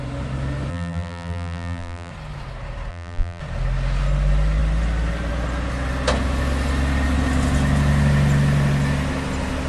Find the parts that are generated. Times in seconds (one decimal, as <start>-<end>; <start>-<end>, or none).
0.7-2.1; 2.9-3.4